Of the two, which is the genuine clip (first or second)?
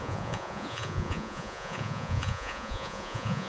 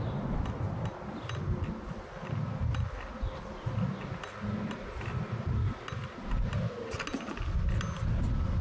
second